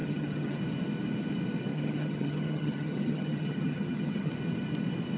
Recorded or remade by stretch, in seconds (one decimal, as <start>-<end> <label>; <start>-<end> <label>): 0.0-0.6 remade; 0.6-1.7 recorded; 1.7-4.3 remade; 4.3-5.2 recorded